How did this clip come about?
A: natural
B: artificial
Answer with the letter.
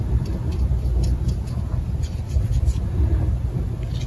B